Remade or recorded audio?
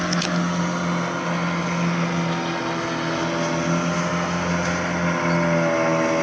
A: recorded